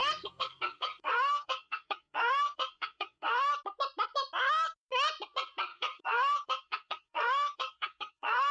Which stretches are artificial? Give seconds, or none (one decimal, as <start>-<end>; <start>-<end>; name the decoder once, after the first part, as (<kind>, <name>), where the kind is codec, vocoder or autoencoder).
0.0-3.5 (codec, SNAC); 5.7-8.5